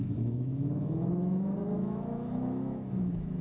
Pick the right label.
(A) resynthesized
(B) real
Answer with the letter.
A